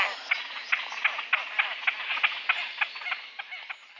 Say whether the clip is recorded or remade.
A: recorded